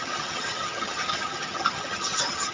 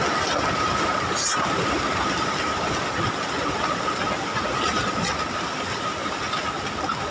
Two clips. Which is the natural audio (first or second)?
second